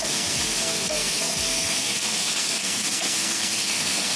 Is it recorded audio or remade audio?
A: remade